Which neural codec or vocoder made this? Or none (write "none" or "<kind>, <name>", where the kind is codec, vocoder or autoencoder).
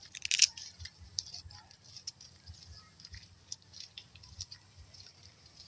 none